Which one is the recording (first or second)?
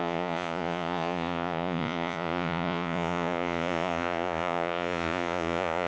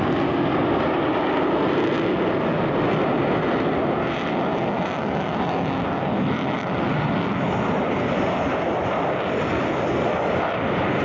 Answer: second